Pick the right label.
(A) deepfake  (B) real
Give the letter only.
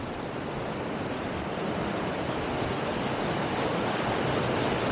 B